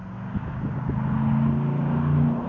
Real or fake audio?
real